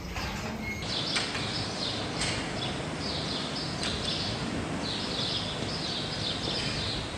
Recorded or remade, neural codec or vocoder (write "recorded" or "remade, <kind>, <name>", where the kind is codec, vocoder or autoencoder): recorded